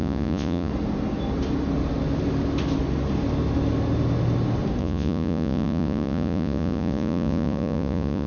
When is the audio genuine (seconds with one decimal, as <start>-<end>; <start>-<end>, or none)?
0.7-4.8